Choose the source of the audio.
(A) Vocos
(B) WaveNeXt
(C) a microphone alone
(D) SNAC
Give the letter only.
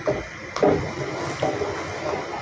C